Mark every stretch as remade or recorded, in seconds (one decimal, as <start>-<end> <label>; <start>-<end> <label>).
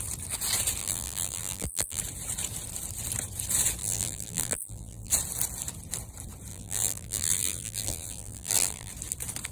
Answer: 0.0-0.8 recorded; 0.8-2.0 remade; 2.0-3.8 recorded; 3.8-5.1 remade; 5.1-6.5 recorded; 6.5-8.9 remade; 8.9-9.5 recorded